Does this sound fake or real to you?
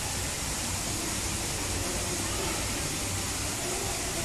real